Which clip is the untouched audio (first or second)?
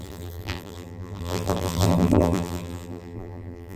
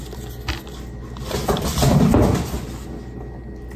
second